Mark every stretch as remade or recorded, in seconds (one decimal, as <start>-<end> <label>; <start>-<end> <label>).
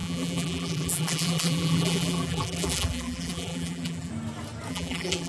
0.0-4.1 remade; 4.1-4.7 recorded; 4.7-5.3 remade